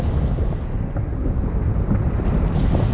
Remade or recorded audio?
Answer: recorded